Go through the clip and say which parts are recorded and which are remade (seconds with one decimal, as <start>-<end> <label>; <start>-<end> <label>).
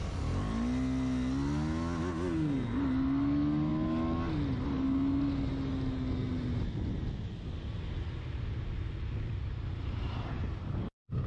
0.0-11.3 recorded